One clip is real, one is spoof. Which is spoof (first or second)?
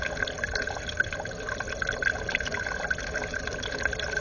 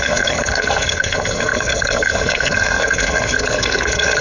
second